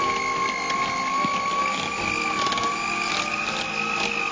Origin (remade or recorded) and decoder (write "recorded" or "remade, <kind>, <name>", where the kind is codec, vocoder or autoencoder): recorded